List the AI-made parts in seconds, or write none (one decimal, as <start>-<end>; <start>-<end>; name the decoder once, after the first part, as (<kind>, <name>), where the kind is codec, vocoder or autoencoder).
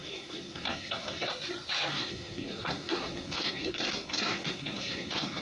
0.0-1.3 (codec, SNAC); 1.9-5.4